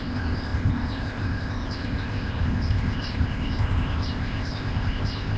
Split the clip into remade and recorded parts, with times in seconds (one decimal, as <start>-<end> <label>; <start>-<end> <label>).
0.0-5.4 remade